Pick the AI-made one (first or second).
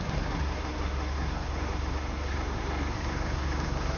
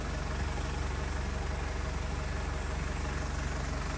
first